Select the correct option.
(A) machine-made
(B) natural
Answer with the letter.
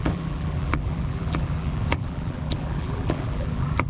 A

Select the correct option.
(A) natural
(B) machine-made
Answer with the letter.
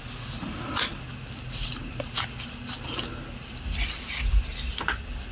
A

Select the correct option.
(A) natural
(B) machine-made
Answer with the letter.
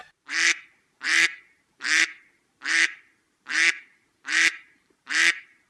B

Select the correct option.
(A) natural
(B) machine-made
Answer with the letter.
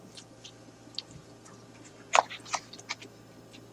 A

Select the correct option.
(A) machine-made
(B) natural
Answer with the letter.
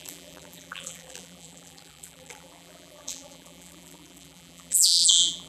A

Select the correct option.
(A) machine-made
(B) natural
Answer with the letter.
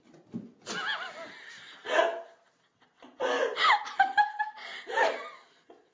B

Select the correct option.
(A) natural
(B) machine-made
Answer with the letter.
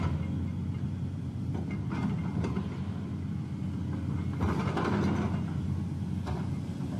A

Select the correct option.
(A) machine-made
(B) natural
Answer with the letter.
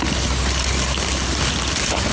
B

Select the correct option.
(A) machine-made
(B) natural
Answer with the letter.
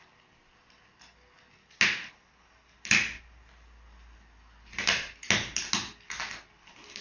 B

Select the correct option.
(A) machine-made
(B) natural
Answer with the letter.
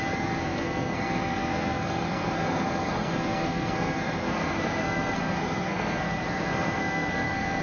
A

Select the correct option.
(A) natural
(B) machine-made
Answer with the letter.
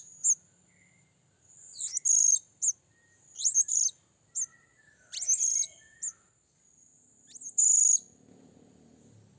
A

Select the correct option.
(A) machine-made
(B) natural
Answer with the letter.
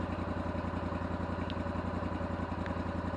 B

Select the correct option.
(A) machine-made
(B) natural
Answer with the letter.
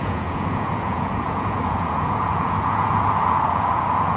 A